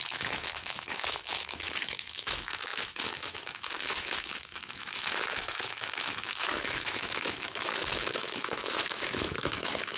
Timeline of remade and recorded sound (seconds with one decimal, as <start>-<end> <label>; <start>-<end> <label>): 0.0-10.0 remade